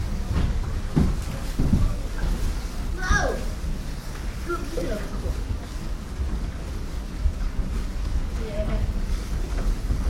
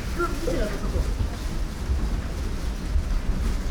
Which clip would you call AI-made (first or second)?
first